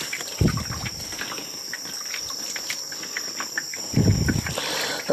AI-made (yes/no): no